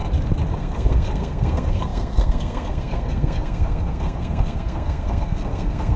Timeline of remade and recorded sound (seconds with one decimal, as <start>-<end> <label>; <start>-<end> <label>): 0.0-0.6 recorded; 0.6-6.0 remade